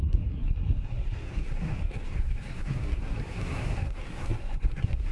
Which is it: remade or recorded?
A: remade